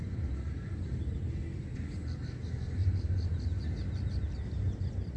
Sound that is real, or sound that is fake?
real